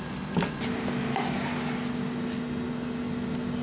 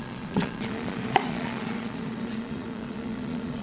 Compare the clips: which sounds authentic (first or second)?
first